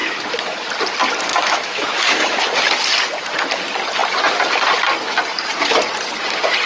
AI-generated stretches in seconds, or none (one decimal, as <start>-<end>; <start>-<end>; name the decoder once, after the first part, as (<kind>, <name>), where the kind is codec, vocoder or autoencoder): 0.0-0.7 (autoencoder, DAC-VAE); 1.3-2.4